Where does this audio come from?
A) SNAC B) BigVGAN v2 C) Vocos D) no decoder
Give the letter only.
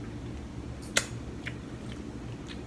D